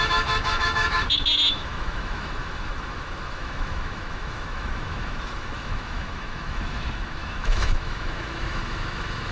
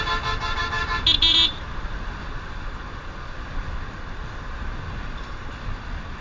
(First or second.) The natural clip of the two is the second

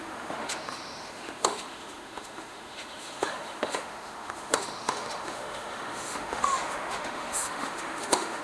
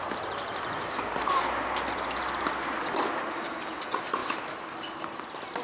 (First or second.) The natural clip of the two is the second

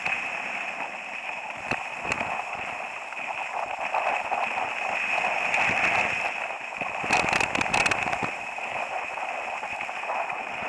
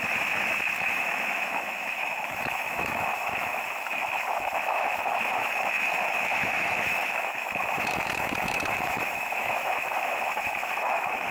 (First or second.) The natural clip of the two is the first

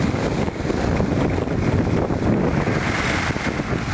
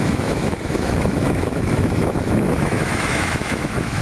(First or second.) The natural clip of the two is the first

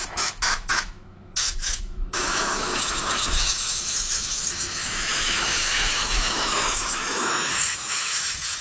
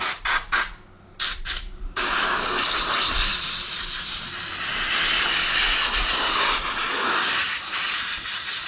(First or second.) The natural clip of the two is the second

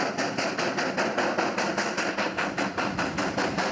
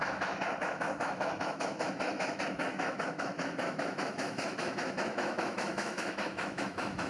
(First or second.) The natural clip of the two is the first